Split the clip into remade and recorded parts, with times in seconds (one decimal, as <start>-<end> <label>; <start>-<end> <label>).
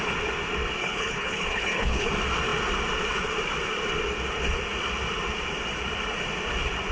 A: 0.0-0.8 recorded; 0.8-2.1 remade; 2.1-6.9 recorded